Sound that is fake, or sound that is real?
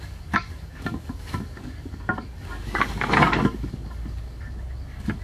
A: fake